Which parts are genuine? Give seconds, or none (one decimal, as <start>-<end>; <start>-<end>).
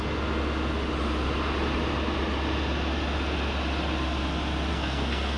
0.0-4.7